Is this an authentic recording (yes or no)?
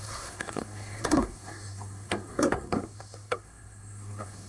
no